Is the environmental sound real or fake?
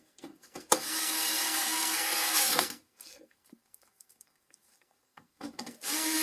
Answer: fake